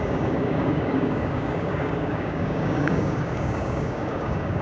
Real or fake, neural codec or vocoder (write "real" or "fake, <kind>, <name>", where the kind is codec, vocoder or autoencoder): fake, codec, DAC